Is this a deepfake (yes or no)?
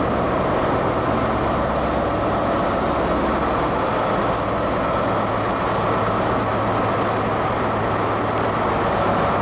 no